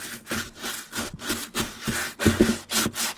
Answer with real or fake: real